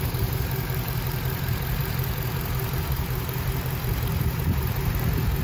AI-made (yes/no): yes